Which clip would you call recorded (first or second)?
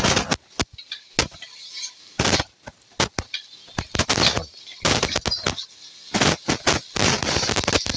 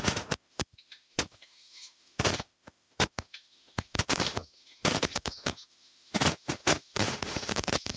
first